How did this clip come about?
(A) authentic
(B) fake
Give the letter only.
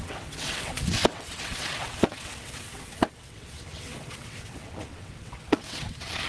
B